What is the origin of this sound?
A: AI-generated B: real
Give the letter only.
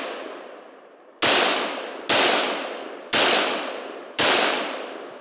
B